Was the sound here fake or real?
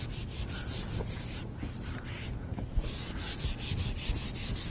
real